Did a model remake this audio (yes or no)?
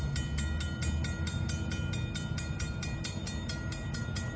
no